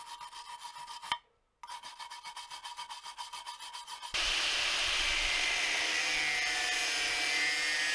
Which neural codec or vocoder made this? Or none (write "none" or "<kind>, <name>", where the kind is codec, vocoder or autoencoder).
none